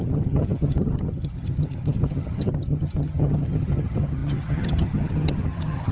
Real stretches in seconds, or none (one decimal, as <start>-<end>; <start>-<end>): none